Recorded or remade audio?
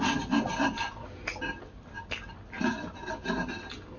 recorded